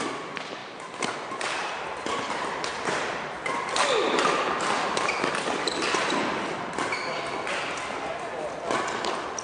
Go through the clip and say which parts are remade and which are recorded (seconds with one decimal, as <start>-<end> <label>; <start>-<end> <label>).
0.0-9.4 recorded